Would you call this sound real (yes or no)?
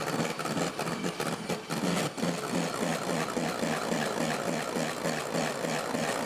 yes